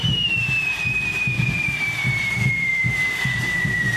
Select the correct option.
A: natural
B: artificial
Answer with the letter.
B